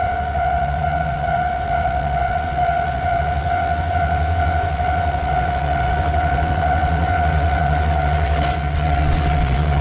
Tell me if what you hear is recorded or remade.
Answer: remade